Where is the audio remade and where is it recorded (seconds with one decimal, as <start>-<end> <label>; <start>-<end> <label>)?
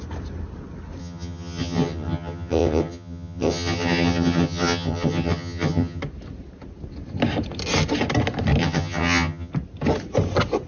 0.0-1.0 recorded; 1.0-6.0 remade; 6.0-8.6 recorded; 8.6-9.5 remade; 9.5-10.7 recorded